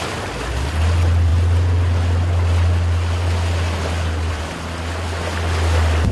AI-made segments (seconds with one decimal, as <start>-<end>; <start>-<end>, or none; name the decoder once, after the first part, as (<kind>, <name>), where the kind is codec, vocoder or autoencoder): none